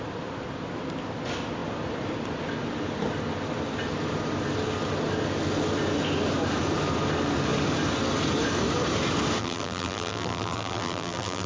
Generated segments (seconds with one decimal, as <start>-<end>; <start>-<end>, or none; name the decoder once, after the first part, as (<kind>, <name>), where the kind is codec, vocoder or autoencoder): 9.4-11.5 (vocoder, BigVGAN v2)